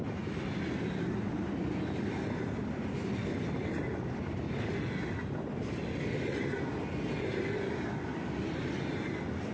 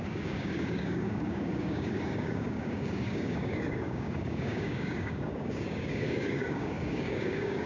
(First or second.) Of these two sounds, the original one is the first